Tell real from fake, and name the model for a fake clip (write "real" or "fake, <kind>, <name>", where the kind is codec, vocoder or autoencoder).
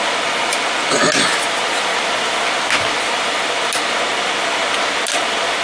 real